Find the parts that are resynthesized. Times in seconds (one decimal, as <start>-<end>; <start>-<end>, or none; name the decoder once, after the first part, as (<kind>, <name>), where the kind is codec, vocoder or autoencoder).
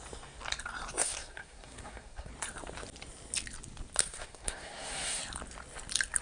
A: 1.0-2.3 (codec, SNAC); 4.0-5.2